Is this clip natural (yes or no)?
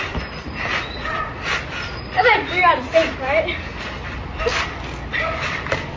no